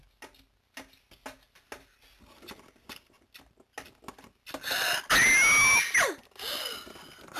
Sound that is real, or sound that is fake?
real